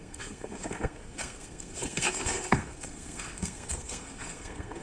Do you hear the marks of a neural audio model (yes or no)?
yes